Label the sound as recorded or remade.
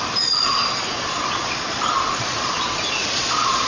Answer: remade